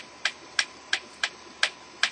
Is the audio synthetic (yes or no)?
no